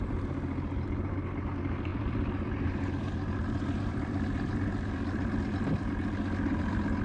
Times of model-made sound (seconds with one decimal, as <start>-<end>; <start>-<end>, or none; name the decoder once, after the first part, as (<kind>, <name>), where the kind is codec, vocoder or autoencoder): 1.9-5.9 (vocoder, BigVGAN v2)